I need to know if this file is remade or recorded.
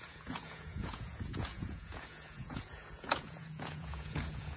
remade